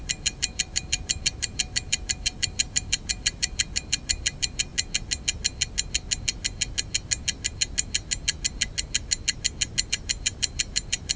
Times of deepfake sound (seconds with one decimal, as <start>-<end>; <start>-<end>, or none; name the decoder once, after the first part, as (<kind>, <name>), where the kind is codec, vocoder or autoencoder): 0.0-4.7 (vocoder, BigVGAN v2); 9.9-11.2